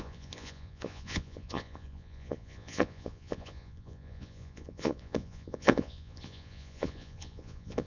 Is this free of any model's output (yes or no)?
no